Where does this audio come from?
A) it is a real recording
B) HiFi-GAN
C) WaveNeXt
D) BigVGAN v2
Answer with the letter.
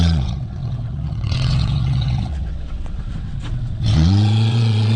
C